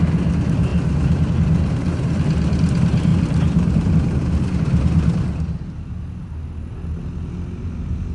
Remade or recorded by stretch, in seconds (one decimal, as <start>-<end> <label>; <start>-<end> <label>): 0.0-0.7 recorded; 0.7-1.3 remade; 1.3-3.1 recorded; 3.1-3.9 remade; 3.9-8.1 recorded